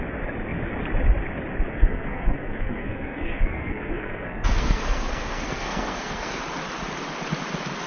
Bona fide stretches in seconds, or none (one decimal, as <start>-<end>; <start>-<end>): 0.0-1.7; 6.4-7.9

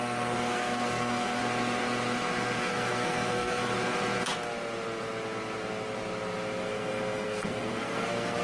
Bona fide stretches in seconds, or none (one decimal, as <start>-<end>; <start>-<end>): 1.4-2.6; 3.7-6.6

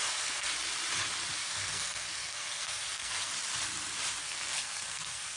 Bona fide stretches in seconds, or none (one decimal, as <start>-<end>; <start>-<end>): 0.5-1.4; 3.3-4.2

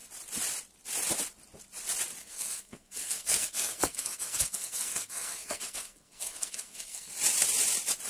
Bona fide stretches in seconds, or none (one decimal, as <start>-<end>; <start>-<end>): 0.0-2.2; 7.1-8.1